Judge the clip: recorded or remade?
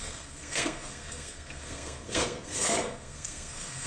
remade